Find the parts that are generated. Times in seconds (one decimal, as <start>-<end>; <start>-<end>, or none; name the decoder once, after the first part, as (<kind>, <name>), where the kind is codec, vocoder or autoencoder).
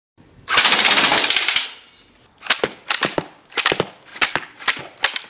none